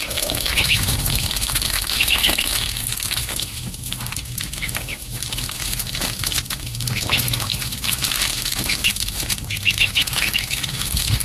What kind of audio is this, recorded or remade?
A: remade